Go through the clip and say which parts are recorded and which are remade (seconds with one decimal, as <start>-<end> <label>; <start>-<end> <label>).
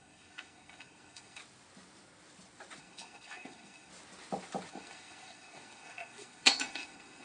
0.0-1.4 remade; 1.4-2.8 recorded; 2.8-3.9 remade; 3.9-4.7 recorded; 4.7-7.2 remade